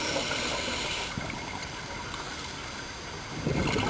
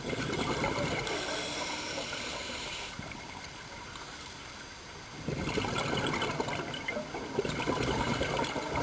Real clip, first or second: first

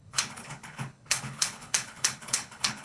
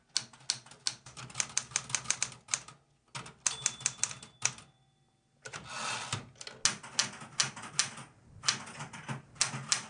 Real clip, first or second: second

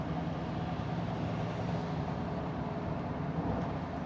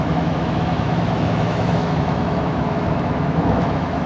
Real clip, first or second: first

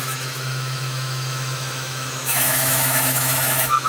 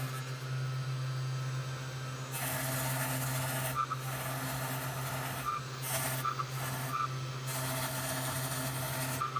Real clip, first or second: second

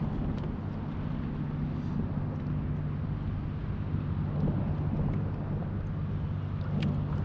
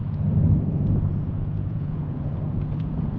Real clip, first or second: first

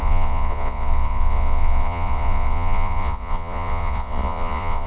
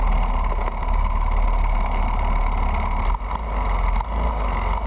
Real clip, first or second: second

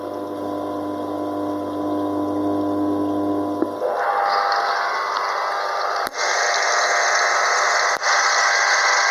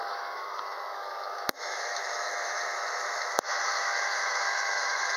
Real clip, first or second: first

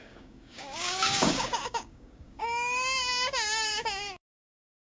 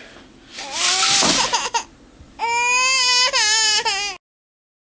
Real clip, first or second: second